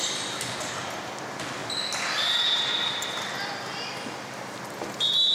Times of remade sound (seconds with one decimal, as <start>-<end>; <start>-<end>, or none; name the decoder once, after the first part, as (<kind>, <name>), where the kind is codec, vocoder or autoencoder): none